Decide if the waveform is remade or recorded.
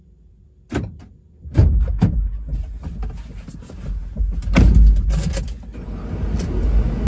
recorded